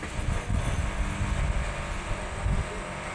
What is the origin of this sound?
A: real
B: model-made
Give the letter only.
A